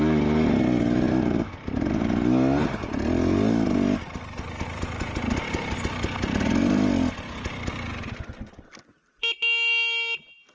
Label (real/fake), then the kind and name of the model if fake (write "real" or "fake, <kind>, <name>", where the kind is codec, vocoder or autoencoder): real